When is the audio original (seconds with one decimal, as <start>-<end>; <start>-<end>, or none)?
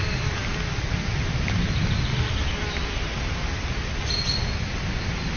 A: 0.0-5.4